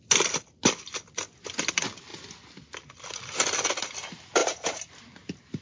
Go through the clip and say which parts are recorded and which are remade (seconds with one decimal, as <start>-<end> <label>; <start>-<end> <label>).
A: 0.0-4.4 recorded; 4.4-4.9 remade; 4.9-5.6 recorded